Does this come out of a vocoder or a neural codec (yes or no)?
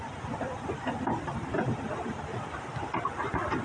no